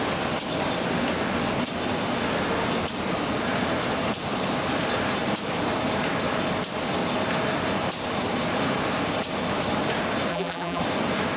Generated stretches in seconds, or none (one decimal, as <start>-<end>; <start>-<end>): 10.3-10.8